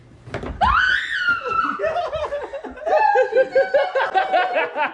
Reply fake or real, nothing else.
real